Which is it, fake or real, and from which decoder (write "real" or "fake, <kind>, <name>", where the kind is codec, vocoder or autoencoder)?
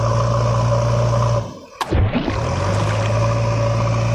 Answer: real